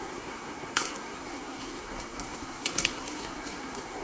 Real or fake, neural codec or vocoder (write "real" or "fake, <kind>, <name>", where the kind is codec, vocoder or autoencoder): fake, codec, SNAC